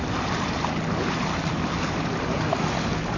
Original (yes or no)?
yes